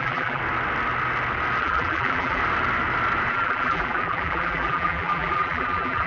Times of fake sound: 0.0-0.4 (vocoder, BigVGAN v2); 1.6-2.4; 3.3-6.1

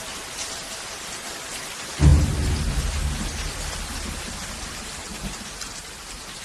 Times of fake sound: 5.1-5.9 (vocoder, BigVGAN v2)

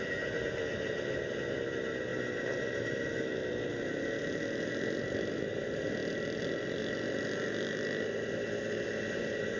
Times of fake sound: none

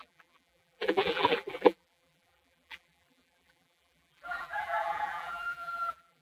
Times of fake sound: 0.0-6.2 (vocoder, BigVGAN v2)

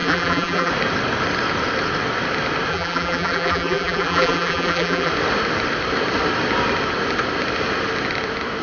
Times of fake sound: 0.0-0.7 (vocoder, BigVGAN v2); 2.7-5.1

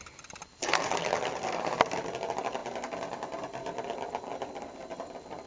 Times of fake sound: none

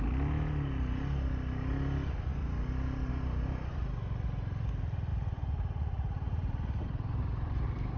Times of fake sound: 5.1-8.0 (vocoder, BigVGAN v2)

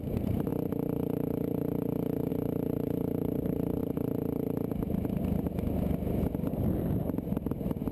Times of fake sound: 0.0-0.5 (vocoder, BigVGAN v2); 2.3-3.8; 6.5-7.9